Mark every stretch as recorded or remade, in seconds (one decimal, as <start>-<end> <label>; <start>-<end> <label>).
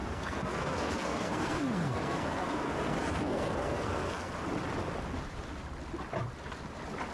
0.0-4.3 remade; 4.3-7.1 recorded